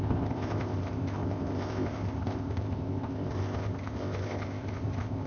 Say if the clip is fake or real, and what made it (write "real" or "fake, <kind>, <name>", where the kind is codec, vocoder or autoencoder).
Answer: fake, codec, ZipCodec